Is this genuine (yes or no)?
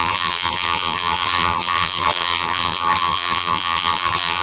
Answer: no